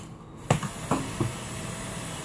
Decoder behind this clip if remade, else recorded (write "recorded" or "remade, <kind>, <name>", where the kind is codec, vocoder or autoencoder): recorded